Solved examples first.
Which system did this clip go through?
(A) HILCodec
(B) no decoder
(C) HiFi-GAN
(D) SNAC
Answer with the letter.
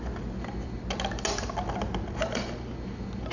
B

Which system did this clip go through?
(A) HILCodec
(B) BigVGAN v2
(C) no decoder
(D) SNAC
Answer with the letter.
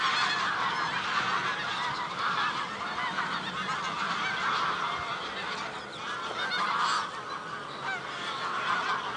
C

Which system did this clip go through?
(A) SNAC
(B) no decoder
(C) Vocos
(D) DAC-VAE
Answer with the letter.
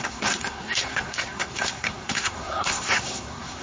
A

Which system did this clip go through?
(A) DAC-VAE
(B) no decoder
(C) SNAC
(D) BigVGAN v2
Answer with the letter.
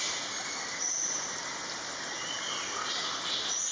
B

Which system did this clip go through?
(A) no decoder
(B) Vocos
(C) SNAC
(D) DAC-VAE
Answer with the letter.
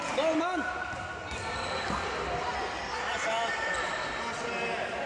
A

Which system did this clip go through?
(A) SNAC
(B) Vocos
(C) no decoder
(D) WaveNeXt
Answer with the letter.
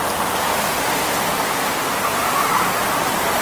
C